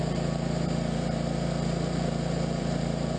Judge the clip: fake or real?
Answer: fake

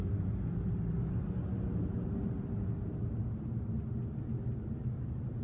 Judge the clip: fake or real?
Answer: real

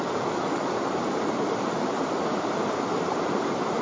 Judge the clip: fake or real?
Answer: fake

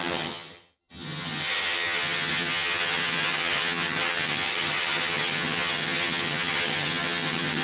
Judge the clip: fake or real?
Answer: fake